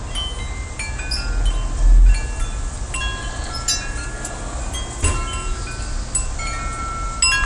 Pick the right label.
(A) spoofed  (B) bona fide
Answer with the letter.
B